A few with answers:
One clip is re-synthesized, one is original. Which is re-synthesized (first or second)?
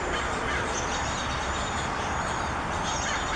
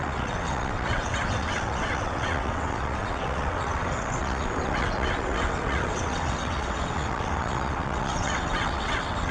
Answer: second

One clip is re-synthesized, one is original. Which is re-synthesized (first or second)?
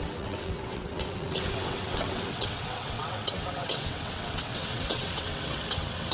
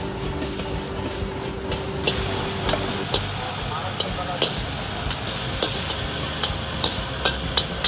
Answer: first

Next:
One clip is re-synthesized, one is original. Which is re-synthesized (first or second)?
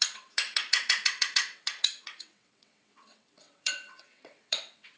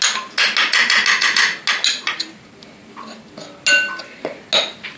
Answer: first